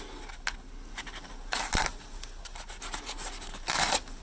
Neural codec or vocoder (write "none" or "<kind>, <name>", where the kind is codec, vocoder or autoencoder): none